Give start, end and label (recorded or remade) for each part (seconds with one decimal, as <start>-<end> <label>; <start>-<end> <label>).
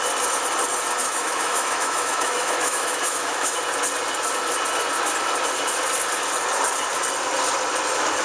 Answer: 0.0-1.0 recorded; 1.0-3.6 remade; 3.6-8.2 recorded